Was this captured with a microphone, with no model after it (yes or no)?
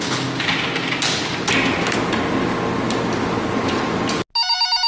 yes